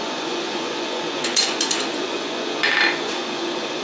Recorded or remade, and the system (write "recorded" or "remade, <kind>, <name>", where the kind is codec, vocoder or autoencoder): remade, vocoder, Vocos